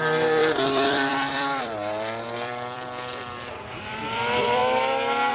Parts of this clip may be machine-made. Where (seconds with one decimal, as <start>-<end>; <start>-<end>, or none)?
0.0-4.6